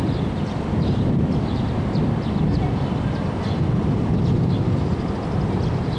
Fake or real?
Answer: real